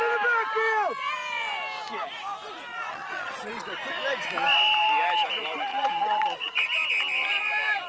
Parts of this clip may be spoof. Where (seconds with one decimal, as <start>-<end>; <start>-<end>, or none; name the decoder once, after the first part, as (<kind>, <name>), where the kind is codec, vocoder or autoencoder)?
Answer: 2.7-3.5 (vocoder, Vocos); 5.7-6.6